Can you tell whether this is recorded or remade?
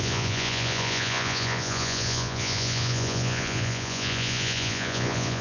remade